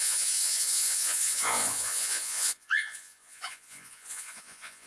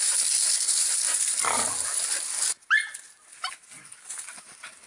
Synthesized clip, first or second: first